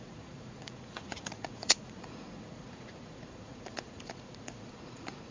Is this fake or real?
fake